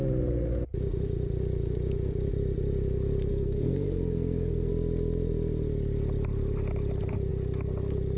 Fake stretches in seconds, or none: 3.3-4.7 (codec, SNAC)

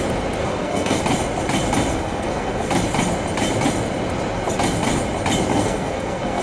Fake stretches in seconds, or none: 0.4-1.0 (codec, SNAC); 1.9-2.7; 5.5-6.4

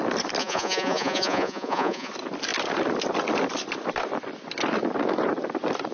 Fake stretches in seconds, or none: 0.4-2.1 (vocoder, Vocos)